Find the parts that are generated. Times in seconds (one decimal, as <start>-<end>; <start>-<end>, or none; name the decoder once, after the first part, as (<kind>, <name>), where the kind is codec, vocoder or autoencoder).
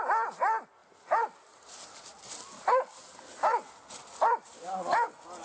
none